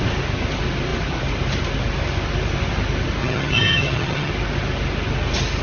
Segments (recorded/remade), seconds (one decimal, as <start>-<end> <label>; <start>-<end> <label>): 0.0-3.2 recorded; 3.2-4.3 remade; 4.3-5.6 recorded